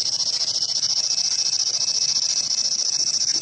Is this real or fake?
real